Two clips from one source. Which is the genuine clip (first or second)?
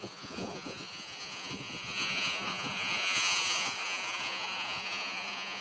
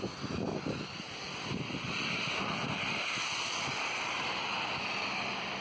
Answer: second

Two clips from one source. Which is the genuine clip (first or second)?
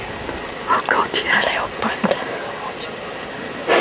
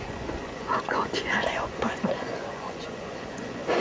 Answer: first